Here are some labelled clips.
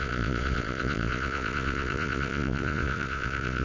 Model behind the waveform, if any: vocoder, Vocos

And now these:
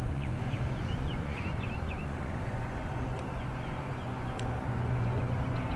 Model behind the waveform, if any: vocoder, Vocos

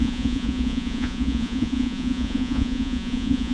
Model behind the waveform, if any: vocoder, Vocos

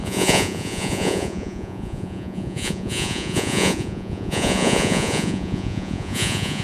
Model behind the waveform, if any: vocoder, Vocos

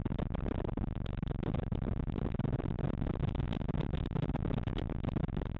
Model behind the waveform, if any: none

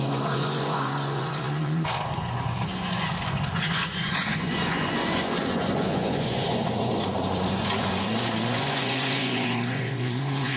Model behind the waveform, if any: vocoder, Vocos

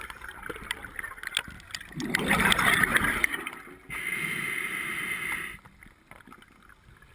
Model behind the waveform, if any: none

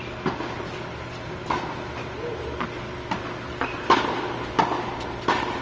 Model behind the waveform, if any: none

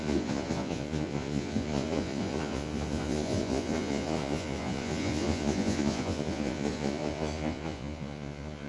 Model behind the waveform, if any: vocoder, Vocos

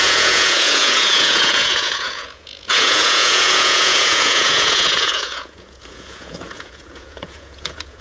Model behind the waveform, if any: vocoder, Vocos